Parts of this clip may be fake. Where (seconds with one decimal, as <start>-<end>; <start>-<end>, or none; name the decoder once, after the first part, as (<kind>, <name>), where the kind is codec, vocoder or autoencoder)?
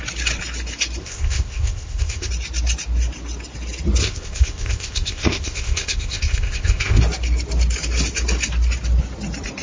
1.0-2.3 (codec, ZipCodec); 4.0-7.0